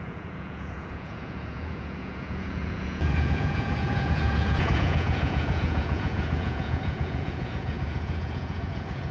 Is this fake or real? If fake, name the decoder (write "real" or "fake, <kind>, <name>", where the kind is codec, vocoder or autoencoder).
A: fake, vocoder, Vocos